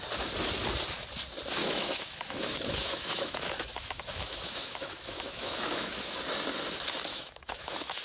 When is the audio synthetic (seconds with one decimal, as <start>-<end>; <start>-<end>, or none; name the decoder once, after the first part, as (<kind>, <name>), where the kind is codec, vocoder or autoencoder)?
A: 1.6-6.2 (autoencoder, DAC-VAE); 7.1-8.0